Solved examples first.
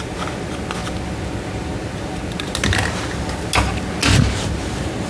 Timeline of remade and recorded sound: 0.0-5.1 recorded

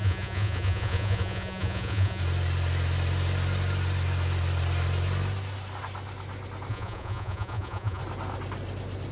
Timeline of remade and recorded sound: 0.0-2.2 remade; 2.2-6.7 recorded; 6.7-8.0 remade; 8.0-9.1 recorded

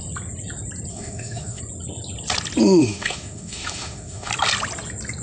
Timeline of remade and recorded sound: 0.0-0.9 recorded; 0.9-1.6 remade; 1.6-2.8 recorded; 2.8-4.3 remade; 4.3-5.2 recorded

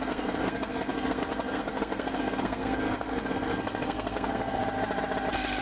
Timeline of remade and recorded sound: 0.0-4.6 remade; 4.6-5.6 recorded

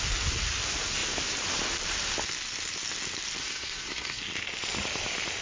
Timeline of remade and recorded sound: 0.0-3.4 recorded; 3.4-4.2 remade; 4.2-5.4 recorded

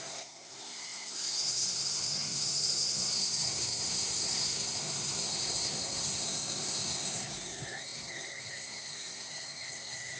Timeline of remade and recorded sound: 0.0-10.2 remade